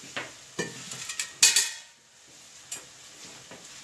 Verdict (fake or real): real